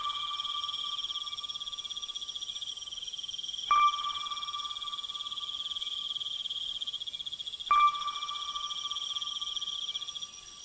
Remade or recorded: recorded